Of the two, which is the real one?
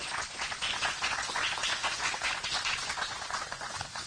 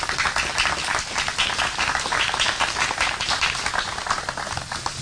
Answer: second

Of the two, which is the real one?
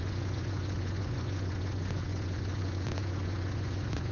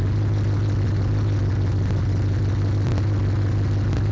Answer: second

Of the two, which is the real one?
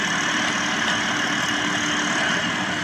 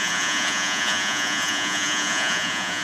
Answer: first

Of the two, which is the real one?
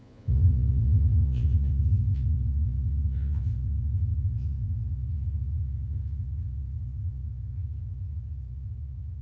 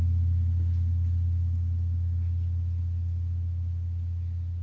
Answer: second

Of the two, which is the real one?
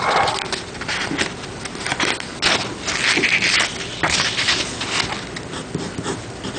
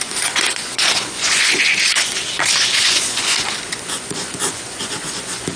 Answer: first